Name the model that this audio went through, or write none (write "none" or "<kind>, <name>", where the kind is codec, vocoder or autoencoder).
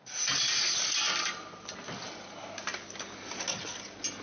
none